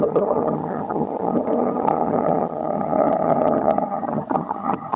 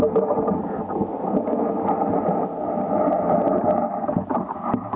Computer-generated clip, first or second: first